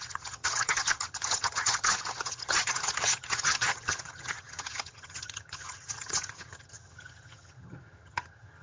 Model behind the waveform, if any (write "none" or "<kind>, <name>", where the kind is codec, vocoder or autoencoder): vocoder, HiFi-GAN